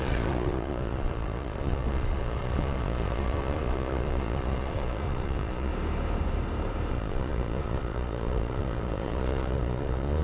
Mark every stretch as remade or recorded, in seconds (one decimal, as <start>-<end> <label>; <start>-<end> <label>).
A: 0.0-5.7 remade; 5.7-6.9 recorded; 6.9-10.2 remade